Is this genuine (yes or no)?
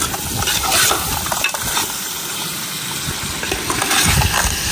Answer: yes